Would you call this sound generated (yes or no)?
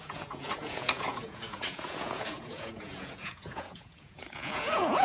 yes